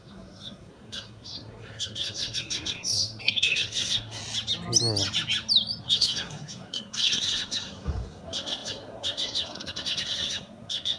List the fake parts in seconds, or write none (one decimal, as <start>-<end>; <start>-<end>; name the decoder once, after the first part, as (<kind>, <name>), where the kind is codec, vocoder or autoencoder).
0.0-4.2 (codec, SNAC); 5.8-11.0